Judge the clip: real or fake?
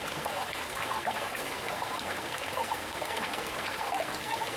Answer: fake